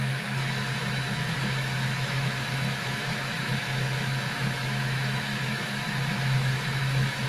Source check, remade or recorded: remade